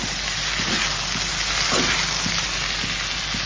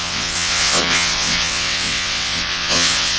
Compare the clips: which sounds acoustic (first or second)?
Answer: first